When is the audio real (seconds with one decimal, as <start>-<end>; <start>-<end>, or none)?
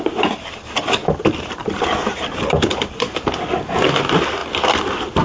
0.0-1.0; 3.3-5.2